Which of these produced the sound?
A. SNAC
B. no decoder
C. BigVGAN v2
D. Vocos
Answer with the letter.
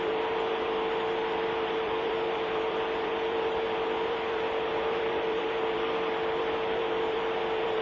C